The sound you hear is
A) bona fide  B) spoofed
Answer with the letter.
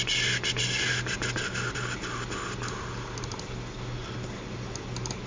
A